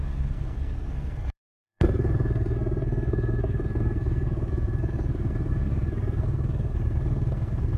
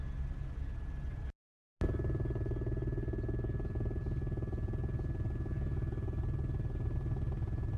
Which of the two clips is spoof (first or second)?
first